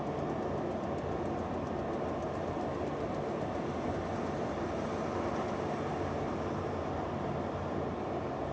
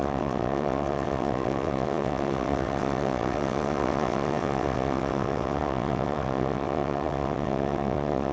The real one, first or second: first